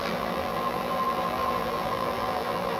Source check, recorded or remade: remade